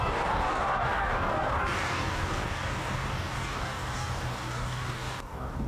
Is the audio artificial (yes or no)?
yes